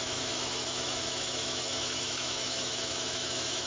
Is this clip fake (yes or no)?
yes